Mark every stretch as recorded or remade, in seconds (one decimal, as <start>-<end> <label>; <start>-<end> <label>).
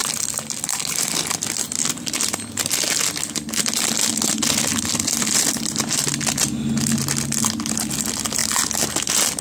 0.0-9.4 recorded